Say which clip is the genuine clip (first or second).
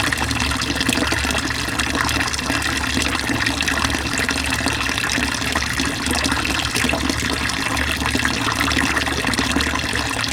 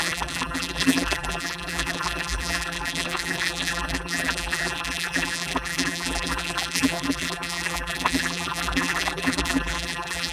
first